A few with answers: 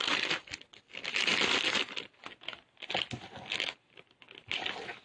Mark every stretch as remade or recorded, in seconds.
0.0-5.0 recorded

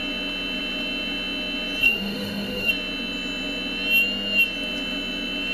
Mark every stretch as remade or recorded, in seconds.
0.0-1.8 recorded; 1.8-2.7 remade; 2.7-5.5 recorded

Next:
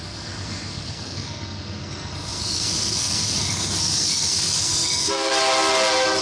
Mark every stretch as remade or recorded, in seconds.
0.0-5.3 remade; 5.3-6.2 recorded

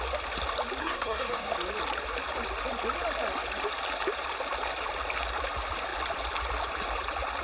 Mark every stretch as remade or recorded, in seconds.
0.0-0.8 recorded; 0.8-1.5 remade; 1.5-7.4 recorded

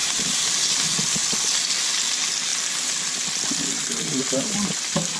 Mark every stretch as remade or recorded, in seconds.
0.0-0.5 remade; 0.5-5.2 recorded

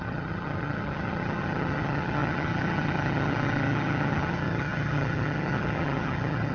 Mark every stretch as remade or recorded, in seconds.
0.0-6.5 remade